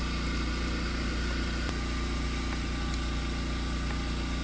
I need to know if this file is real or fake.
real